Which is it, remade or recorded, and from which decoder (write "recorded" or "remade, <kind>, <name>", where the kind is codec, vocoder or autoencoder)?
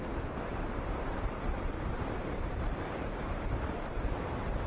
remade, vocoder, BigVGAN v2